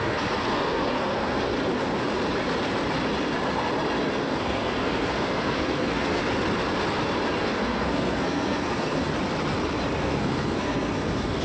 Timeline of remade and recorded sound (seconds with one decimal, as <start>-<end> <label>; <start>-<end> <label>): 0.0-1.5 remade; 1.5-4.2 recorded; 4.2-6.2 remade; 6.2-7.4 recorded; 7.4-9.1 remade; 9.1-10.0 recorded; 10.0-11.4 remade